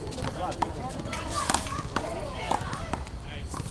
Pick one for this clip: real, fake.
real